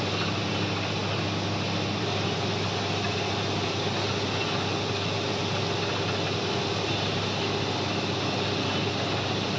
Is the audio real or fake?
real